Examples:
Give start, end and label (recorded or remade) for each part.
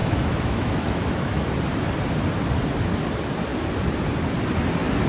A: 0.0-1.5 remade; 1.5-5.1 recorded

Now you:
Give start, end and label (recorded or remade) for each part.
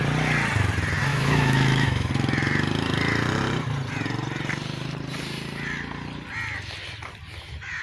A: 0.0-1.1 recorded; 1.1-2.1 remade; 2.1-7.8 recorded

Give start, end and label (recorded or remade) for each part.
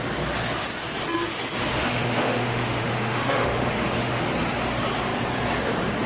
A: 0.0-1.7 recorded; 1.7-4.2 remade; 4.2-6.1 recorded